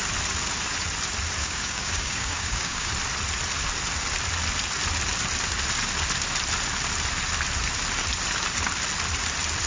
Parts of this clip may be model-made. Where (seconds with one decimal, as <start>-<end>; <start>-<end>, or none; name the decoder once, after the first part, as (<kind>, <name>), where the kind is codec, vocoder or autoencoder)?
1.4-2.9 (codec, DAC)